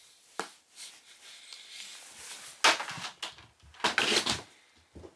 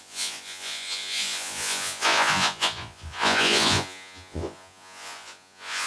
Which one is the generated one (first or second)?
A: second